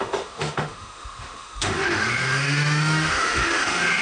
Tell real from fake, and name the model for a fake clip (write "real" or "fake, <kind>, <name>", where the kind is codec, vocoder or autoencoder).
fake, autoencoder, DAC-VAE